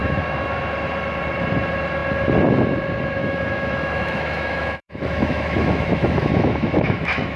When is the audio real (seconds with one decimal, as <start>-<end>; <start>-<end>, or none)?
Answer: 0.6-3.2